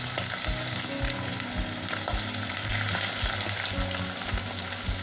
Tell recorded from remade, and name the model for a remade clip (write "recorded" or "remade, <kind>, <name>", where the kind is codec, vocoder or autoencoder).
recorded